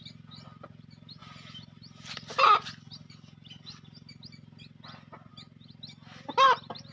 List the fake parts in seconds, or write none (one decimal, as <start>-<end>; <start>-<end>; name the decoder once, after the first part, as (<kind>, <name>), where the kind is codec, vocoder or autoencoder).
none